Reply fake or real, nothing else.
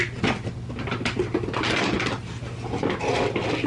real